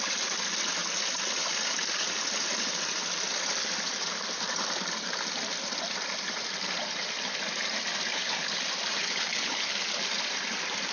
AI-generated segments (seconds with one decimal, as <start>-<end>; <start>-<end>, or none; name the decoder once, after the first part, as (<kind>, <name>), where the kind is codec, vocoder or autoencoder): 8.1-8.6 (codec, HILCodec); 9.0-9.8